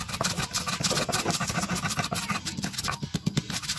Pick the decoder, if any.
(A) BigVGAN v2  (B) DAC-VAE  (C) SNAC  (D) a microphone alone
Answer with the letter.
D